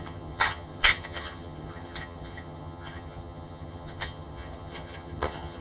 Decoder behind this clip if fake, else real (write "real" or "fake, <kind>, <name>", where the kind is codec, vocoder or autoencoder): fake, vocoder, HiFi-GAN